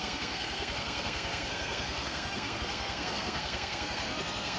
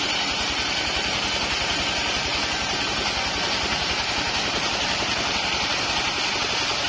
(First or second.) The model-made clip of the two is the first